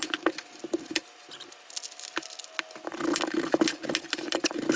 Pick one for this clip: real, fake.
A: real